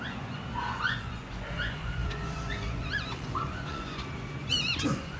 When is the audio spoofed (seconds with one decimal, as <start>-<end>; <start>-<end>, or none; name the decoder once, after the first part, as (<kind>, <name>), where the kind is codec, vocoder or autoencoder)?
0.0-5.2 (vocoder, Vocos)